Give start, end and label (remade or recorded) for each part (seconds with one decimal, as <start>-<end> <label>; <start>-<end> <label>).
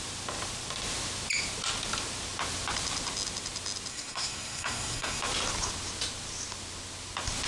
0.0-3.9 recorded; 3.9-5.2 remade; 5.2-7.5 recorded